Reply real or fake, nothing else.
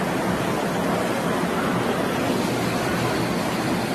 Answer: real